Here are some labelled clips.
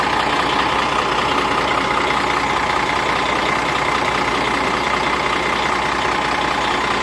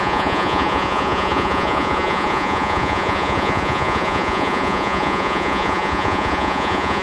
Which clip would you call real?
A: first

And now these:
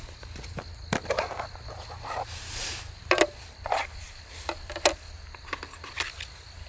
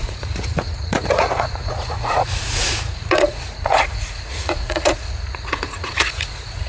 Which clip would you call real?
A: first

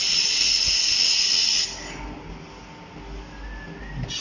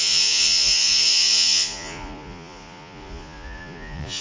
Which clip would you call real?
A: first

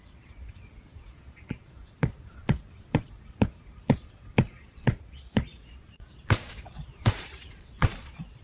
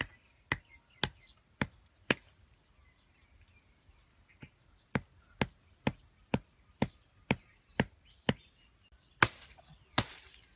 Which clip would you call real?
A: second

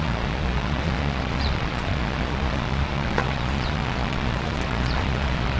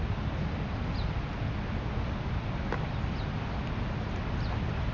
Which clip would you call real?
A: second